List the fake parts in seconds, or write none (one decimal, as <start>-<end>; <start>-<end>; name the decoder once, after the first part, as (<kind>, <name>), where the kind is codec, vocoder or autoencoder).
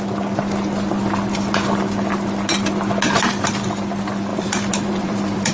4.3-5.5 (vocoder, BigVGAN v2)